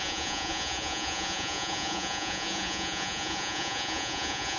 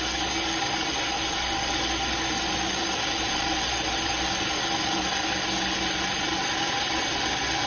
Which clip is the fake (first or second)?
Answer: first